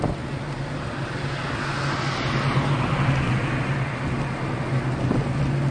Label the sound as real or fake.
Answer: real